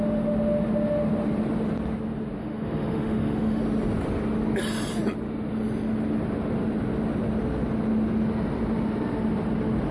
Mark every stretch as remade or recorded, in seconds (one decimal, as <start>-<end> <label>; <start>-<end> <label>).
0.0-2.4 recorded; 2.4-3.6 remade; 3.6-9.9 recorded